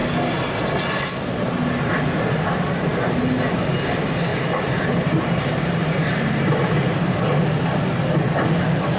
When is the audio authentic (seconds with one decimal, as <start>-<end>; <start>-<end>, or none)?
0.0-4.3; 7.2-9.0